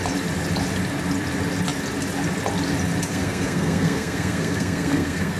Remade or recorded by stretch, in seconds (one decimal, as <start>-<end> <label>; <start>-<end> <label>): 0.0-3.1 recorded; 3.1-5.4 remade